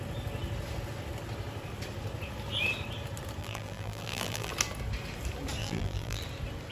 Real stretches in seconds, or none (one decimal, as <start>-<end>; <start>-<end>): 0.0-3.4; 4.5-5.6; 6.2-6.7